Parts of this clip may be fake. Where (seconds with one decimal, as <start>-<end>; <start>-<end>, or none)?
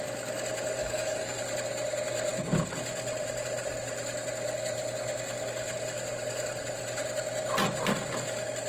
0.8-1.4